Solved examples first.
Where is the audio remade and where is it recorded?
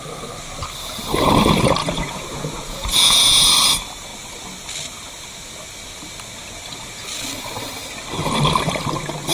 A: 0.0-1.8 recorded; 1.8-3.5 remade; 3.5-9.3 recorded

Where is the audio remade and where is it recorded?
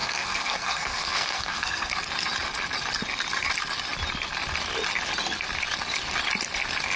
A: 0.0-1.9 remade; 1.9-7.0 recorded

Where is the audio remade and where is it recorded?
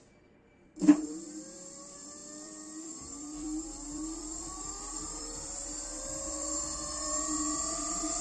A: 0.0-8.2 remade